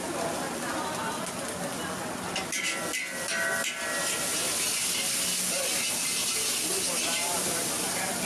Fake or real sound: real